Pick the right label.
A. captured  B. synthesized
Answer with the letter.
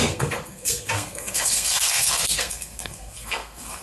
B